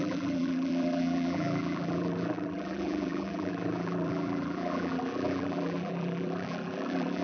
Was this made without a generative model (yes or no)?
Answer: no